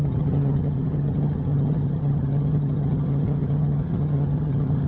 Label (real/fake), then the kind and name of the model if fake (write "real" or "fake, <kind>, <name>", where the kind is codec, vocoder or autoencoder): fake, vocoder, HiFi-GAN